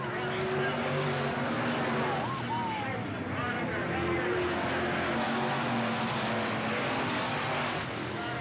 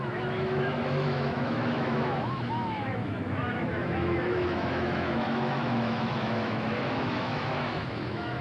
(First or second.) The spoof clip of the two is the second